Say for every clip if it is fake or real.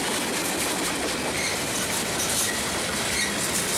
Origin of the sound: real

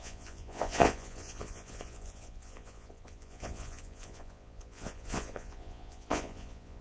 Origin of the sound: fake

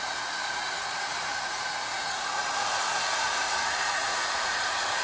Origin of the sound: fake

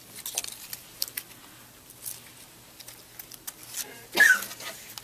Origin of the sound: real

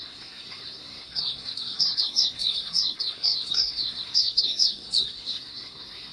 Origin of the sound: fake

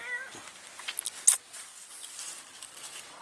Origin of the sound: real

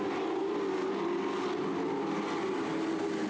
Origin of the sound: real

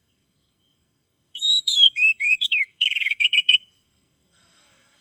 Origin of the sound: fake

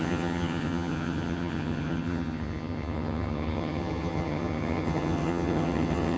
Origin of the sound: fake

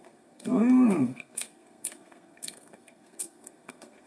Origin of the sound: fake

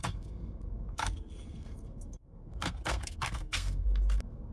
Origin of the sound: fake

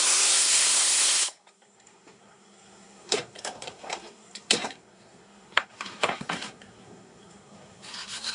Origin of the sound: fake